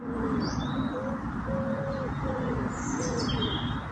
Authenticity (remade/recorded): recorded